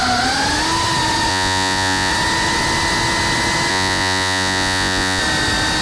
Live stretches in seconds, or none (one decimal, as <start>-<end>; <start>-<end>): 0.0-1.3; 2.1-3.7; 5.2-5.8